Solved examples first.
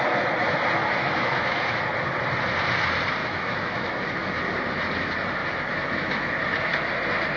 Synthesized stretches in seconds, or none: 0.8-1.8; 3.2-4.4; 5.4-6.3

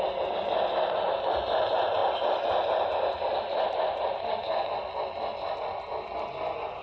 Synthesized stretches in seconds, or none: none

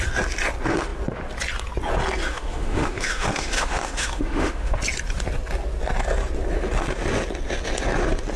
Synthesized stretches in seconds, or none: 2.2-4.8

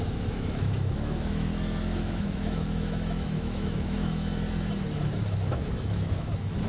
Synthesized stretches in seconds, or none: 0.0-1.5; 2.0-4.3; 5.0-6.7

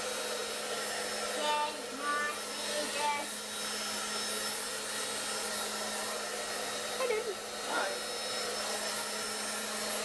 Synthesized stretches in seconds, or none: none

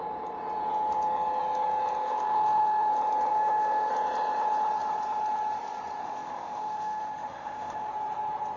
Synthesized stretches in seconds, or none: 2.0-2.9; 3.3-3.9; 6.0-7.9

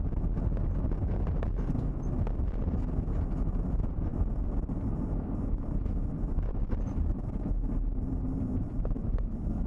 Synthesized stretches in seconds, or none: none